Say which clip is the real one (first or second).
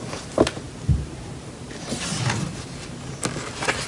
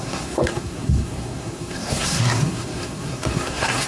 first